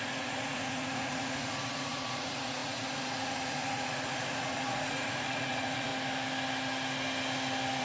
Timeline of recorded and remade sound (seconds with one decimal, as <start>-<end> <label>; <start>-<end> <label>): 0.0-5.9 remade; 5.9-7.8 recorded